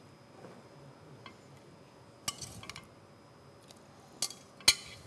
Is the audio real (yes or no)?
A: yes